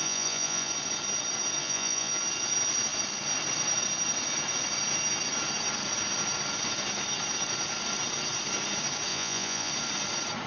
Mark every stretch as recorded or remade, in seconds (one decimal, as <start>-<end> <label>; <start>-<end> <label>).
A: 0.0-0.7 remade; 0.7-1.6 recorded; 1.6-2.1 remade; 2.1-9.1 recorded; 9.1-9.7 remade; 9.7-10.5 recorded